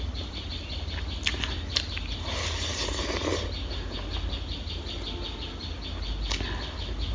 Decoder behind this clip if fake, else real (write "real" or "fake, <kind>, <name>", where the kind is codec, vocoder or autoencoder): real